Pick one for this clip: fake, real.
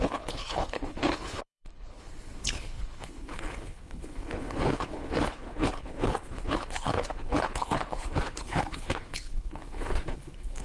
fake